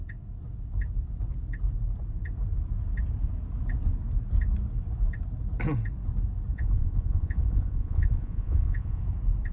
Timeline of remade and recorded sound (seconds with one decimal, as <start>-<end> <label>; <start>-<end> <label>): 0.0-6.5 recorded; 6.5-9.0 remade; 9.0-9.5 recorded